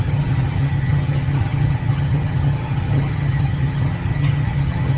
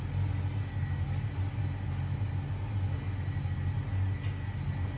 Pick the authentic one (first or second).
second